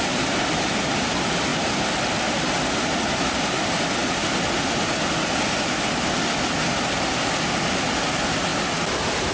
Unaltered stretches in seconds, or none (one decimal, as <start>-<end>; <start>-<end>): 0.0-9.3